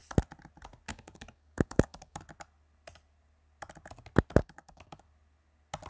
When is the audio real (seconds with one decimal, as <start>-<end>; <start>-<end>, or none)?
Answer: 0.0-0.9; 2.2-4.4; 5.0-5.9